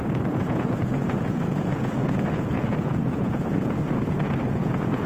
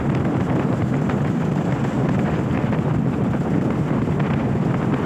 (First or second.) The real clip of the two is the second